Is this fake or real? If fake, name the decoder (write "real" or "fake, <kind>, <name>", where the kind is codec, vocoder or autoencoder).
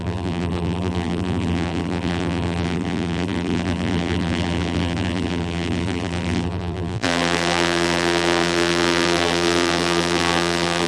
fake, vocoder, BigVGAN v2